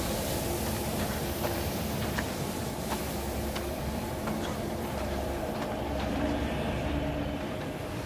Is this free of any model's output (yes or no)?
no